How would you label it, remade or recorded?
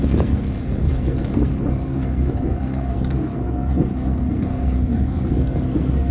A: remade